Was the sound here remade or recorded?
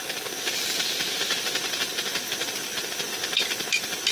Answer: recorded